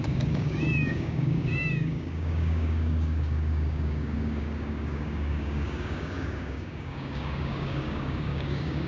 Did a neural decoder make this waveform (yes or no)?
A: yes